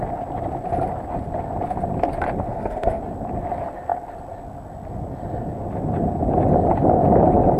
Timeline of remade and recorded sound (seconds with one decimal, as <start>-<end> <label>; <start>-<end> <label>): 0.0-2.5 recorded; 2.5-3.0 remade; 3.0-7.6 recorded

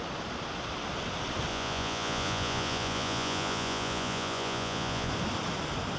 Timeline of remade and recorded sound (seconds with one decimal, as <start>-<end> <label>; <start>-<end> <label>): 0.0-1.5 recorded; 1.5-5.1 remade; 5.1-6.0 recorded

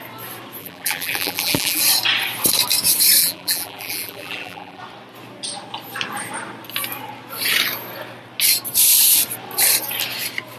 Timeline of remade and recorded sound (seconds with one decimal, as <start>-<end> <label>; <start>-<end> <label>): 0.0-0.6 recorded; 0.6-1.8 remade; 1.8-3.2 recorded; 3.2-4.8 remade; 4.8-10.6 recorded

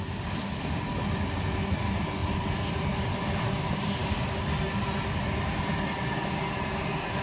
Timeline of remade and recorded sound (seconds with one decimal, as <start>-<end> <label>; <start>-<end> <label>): 0.0-7.2 recorded

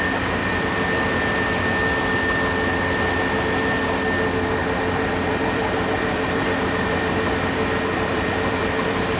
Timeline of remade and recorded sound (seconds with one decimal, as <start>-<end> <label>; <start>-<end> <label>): 0.0-0.4 recorded; 0.4-1.9 remade; 1.9-4.6 recorded; 4.6-7.3 remade; 7.3-8.1 recorded; 8.1-9.2 remade